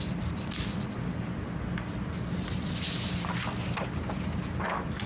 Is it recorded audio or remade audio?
recorded